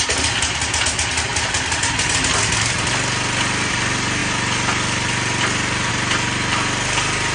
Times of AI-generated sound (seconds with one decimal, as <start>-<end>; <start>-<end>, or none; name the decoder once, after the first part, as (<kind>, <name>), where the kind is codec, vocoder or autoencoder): none